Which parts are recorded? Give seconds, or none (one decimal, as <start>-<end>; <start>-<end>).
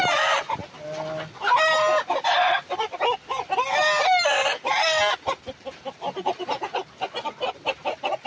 0.0-8.3